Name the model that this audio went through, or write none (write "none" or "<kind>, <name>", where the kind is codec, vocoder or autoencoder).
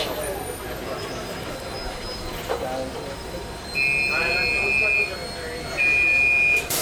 none